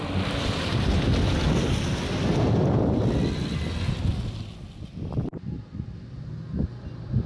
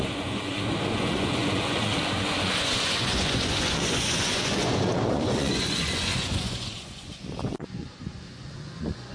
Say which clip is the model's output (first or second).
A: second